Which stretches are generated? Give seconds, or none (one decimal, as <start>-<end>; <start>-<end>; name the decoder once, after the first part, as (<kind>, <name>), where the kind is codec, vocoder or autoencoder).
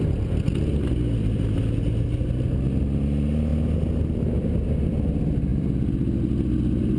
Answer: none